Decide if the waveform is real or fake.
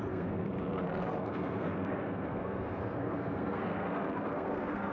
fake